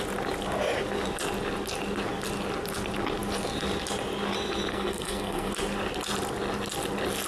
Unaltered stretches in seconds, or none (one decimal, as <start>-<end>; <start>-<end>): 0.0-4.7; 5.5-7.3